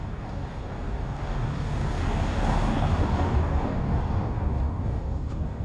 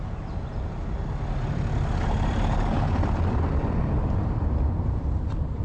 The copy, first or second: first